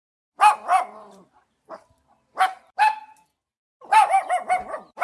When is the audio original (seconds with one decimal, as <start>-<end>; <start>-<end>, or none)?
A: 0.0-0.7; 1.7-3.9; 4.5-5.0